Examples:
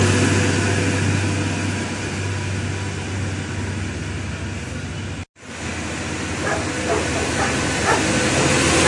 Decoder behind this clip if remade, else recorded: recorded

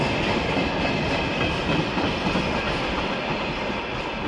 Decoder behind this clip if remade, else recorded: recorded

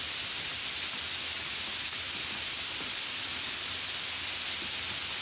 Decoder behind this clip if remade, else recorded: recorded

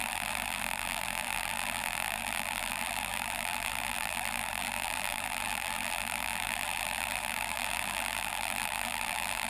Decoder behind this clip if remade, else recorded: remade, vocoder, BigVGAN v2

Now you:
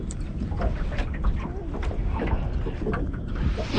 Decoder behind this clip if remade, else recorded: recorded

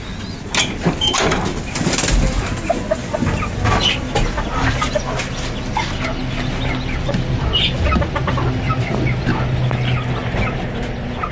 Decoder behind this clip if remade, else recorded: recorded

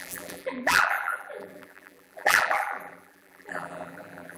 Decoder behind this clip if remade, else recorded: remade, vocoder, BigVGAN v2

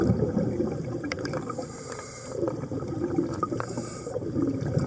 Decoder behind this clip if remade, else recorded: remade, vocoder, BigVGAN v2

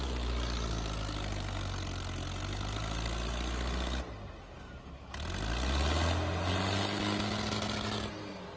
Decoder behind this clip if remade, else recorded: recorded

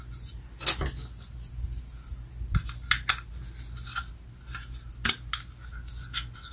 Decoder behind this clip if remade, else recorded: recorded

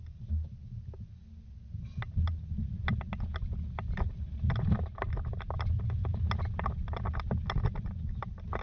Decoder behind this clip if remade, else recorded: recorded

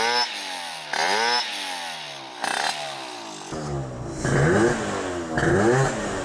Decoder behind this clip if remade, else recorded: recorded